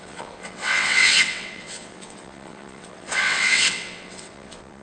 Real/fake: fake